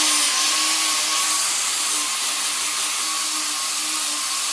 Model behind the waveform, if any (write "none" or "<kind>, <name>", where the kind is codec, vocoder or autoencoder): none